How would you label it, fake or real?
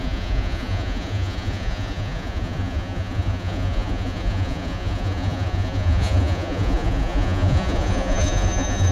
fake